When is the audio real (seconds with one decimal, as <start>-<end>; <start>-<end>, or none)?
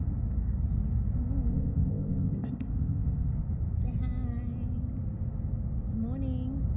0.0-1.5; 3.3-6.8